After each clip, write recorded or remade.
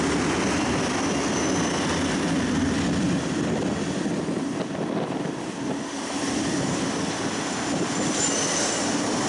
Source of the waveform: recorded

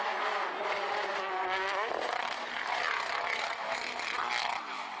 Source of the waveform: recorded